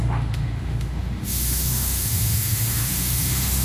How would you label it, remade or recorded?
remade